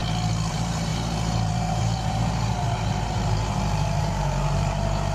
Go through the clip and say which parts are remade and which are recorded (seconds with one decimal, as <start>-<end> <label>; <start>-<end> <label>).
0.0-0.5 recorded; 0.5-5.1 remade